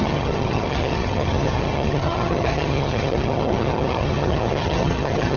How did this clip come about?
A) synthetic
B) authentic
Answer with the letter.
A